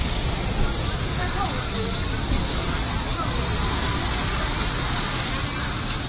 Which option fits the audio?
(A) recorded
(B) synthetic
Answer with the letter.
A